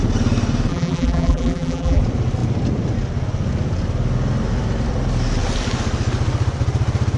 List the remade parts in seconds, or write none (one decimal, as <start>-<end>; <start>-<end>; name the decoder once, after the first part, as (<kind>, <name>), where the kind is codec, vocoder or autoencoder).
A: 0.7-2.0 (vocoder, BigVGAN v2)